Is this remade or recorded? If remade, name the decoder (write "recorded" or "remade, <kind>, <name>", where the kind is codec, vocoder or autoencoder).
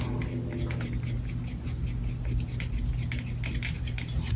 recorded